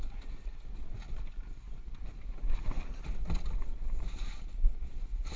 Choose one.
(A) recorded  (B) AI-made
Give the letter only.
A